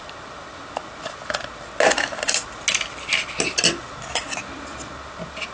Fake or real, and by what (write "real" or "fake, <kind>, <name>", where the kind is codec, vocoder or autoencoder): real